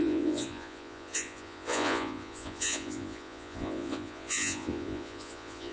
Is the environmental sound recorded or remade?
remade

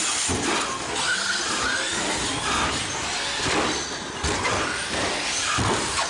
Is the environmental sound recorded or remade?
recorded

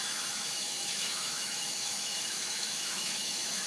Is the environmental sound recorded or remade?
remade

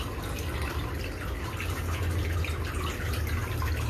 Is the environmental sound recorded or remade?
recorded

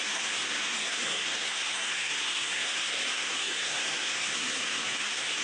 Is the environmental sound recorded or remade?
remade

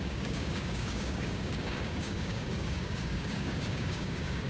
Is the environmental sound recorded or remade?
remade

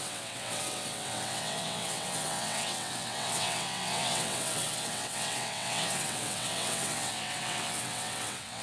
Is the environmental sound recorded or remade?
remade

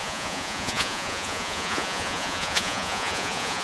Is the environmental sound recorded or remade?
remade